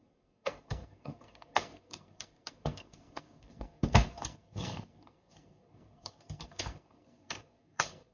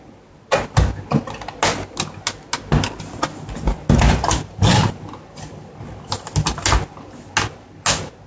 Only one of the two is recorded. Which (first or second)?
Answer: second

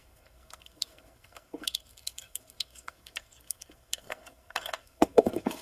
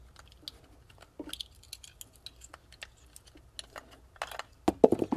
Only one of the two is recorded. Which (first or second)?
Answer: second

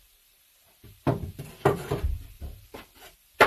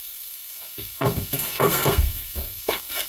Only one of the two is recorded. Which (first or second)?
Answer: first